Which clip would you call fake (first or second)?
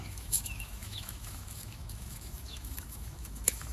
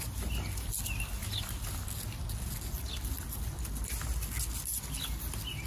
first